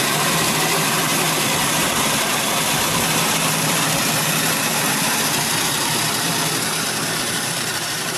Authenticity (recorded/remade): remade